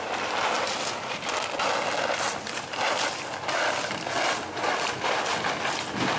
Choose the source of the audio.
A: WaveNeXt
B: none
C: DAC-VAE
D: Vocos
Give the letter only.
B